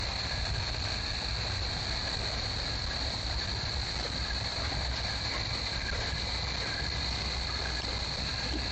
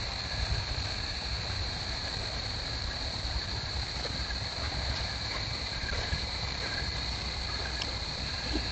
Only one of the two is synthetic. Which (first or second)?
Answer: second